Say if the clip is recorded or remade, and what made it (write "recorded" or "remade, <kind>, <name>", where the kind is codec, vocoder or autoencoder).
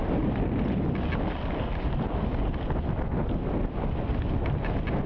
recorded